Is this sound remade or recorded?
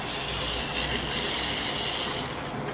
recorded